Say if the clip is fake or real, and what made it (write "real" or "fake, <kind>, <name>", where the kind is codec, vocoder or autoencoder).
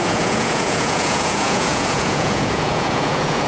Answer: fake, vocoder, Vocos